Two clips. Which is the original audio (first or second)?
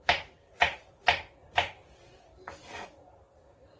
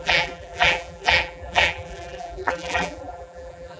first